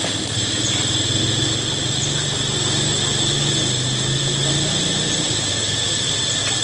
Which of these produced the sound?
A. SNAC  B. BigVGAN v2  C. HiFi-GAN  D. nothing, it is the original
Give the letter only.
D